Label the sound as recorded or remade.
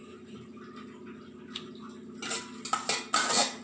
recorded